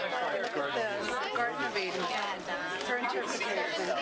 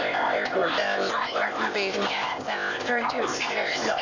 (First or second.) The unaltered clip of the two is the first